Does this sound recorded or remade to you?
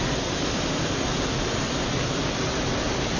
recorded